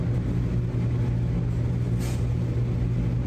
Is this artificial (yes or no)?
no